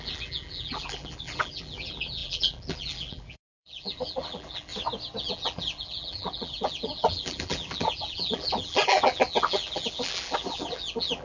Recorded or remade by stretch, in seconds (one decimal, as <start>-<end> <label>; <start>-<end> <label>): 0.0-4.7 remade; 4.7-5.2 recorded; 5.2-11.2 remade